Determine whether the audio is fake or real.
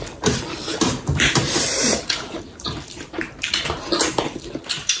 fake